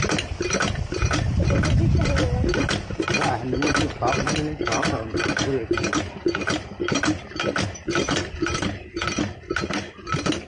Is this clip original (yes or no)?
yes